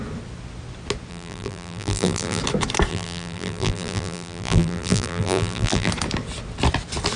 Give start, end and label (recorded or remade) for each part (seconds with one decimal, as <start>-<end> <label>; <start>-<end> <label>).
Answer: 0.0-1.1 recorded; 1.1-2.4 remade; 2.4-2.9 recorded; 2.9-5.9 remade; 5.9-7.2 recorded